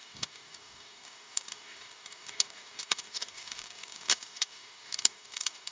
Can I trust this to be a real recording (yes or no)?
no